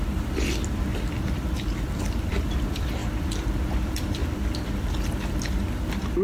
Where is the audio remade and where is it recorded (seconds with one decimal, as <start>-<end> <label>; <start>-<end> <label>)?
0.0-0.9 remade; 0.9-2.0 recorded; 2.0-3.0 remade; 3.0-3.7 recorded; 3.7-6.2 remade